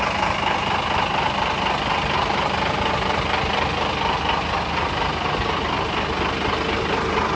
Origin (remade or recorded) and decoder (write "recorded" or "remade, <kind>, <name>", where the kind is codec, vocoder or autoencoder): recorded